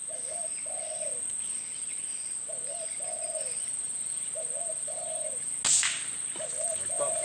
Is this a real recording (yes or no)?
yes